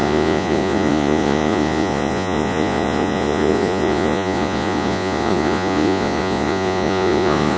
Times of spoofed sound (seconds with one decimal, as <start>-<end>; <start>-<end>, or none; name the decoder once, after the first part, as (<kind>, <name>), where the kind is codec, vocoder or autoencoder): 0.0-7.6 (vocoder, Vocos)